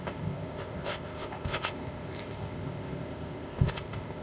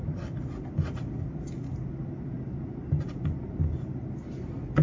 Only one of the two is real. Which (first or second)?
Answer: second